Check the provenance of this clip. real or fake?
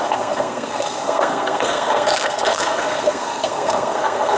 fake